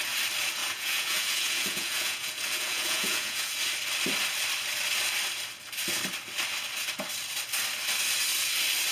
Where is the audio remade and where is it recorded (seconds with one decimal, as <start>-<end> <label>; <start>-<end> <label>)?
0.0-0.6 recorded; 0.6-3.5 remade; 3.5-8.9 recorded